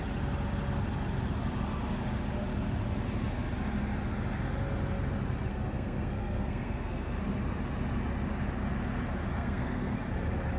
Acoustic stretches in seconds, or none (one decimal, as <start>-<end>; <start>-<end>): 0.0-5.5; 7.2-9.3; 10.0-10.6